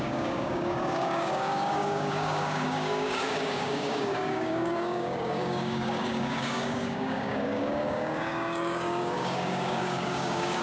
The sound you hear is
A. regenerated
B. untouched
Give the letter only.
A